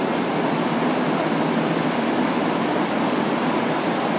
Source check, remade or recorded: recorded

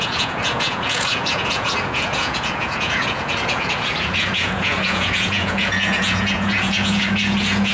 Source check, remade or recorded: remade